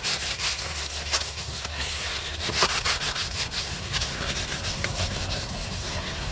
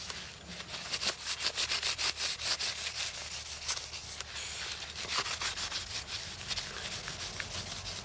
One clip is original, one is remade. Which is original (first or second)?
second